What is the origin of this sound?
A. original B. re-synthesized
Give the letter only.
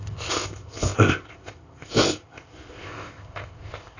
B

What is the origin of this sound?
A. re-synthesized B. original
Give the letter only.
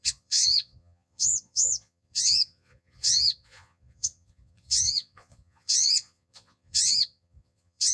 A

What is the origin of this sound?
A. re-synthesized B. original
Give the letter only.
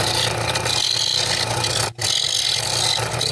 B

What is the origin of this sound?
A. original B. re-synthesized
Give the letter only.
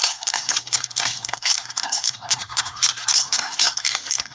B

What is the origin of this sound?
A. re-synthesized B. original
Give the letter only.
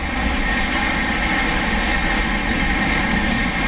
B